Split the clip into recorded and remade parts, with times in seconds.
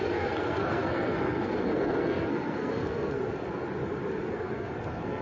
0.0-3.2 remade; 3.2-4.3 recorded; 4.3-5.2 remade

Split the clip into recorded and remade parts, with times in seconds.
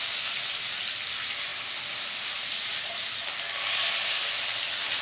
0.0-5.0 recorded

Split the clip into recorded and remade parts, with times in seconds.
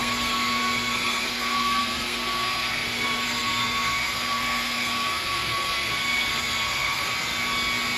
0.0-7.1 remade; 7.1-8.0 recorded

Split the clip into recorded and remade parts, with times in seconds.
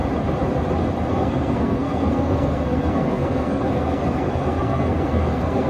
0.0-1.1 recorded; 1.1-5.7 remade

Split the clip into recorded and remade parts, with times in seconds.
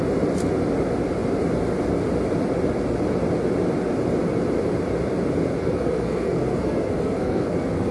0.0-5.6 recorded; 5.6-7.9 remade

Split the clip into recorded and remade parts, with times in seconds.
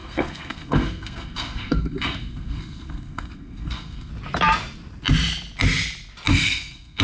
0.0-4.1 remade; 4.1-6.3 recorded; 6.3-7.0 remade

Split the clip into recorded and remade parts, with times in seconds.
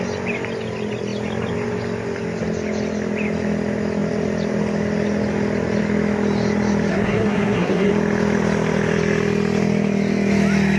0.0-6.9 recorded; 6.9-7.9 remade; 7.9-10.8 recorded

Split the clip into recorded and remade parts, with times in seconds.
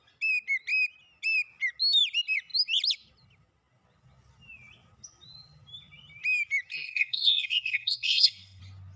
0.0-6.7 recorded; 6.7-8.6 remade; 8.6-9.0 recorded